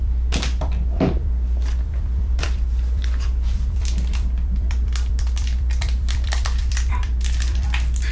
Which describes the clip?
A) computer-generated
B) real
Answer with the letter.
A